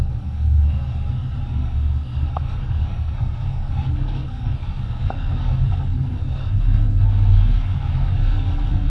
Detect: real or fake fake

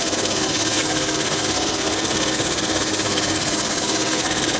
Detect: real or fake fake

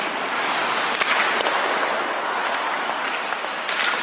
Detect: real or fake real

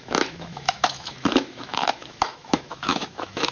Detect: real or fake fake